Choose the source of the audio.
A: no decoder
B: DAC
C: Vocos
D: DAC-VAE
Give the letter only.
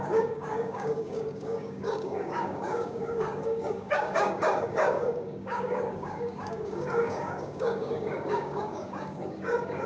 B